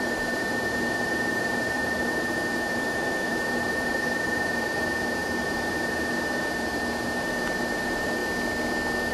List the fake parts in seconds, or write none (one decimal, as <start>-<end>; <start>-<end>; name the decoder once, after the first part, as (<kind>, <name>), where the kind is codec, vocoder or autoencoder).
0.0-8.2 (vocoder, BigVGAN v2)